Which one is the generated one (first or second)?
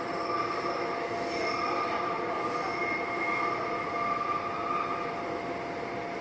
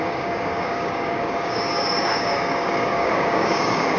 second